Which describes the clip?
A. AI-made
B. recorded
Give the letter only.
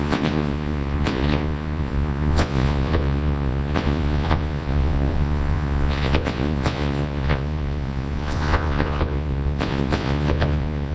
A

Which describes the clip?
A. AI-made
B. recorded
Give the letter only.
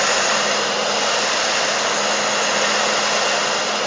B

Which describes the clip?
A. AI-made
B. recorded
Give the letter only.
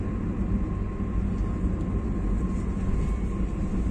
B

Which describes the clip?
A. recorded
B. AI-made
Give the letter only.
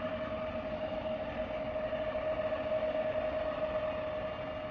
A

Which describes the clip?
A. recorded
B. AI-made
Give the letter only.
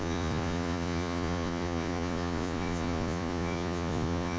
B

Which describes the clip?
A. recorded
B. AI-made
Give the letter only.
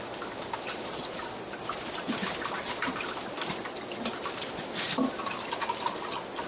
A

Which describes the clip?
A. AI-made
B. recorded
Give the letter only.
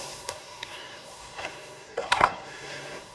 A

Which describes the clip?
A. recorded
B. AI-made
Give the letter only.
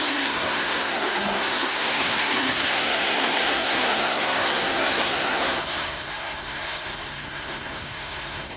B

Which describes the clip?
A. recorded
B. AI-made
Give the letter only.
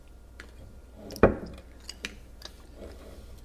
A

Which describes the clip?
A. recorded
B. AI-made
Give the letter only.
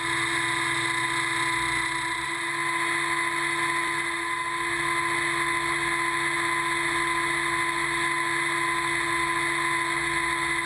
A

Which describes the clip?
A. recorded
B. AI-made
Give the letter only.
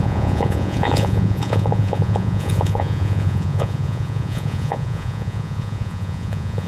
B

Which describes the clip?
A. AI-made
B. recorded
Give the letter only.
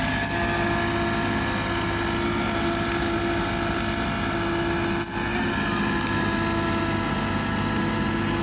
B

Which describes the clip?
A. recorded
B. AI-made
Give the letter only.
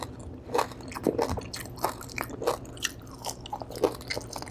A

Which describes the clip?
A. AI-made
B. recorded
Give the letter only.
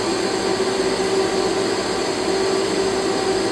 B